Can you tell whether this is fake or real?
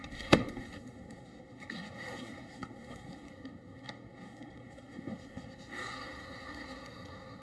fake